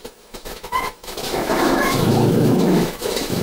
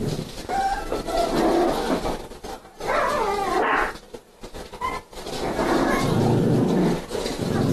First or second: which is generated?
first